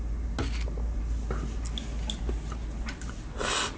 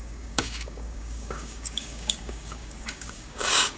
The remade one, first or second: second